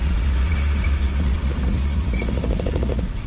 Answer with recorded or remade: remade